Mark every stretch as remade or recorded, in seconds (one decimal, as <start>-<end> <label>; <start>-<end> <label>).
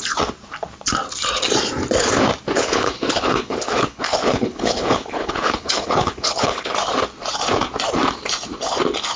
0.0-2.6 recorded; 2.6-6.7 remade; 6.7-9.2 recorded